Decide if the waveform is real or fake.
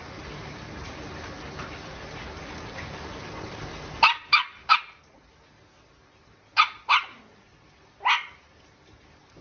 real